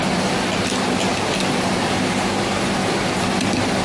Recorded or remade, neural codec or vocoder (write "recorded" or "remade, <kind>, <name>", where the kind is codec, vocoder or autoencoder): recorded